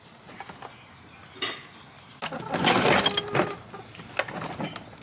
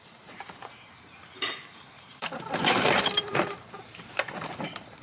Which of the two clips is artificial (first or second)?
second